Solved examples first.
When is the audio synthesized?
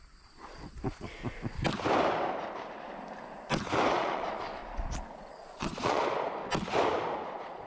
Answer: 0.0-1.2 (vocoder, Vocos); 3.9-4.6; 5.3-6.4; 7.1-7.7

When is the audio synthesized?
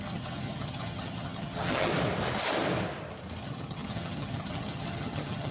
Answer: 0.0-1.9 (vocoder, HiFi-GAN); 3.4-5.5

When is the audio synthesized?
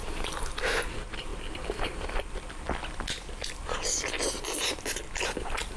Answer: none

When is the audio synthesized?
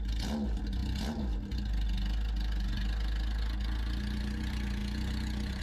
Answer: none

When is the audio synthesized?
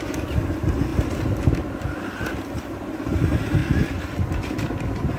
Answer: none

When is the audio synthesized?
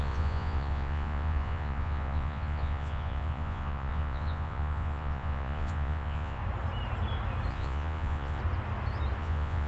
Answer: 0.0-6.4 (vocoder, Vocos); 7.5-8.4; 9.2-9.7